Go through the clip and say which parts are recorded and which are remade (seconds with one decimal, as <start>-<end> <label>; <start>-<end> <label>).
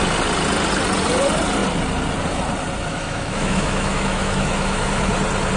0.0-2.9 recorded; 2.9-5.1 remade; 5.1-5.6 recorded